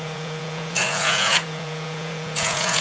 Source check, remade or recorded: remade